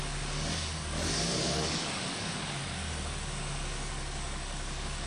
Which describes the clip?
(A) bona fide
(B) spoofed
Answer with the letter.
B